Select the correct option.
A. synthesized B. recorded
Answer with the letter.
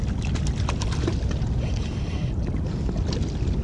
B